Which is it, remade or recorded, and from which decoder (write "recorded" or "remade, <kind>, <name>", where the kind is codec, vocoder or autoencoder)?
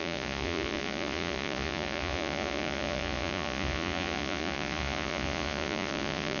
remade, vocoder, Vocos